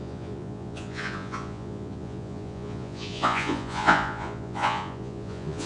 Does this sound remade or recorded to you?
remade